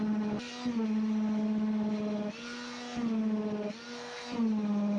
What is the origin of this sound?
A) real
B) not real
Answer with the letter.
A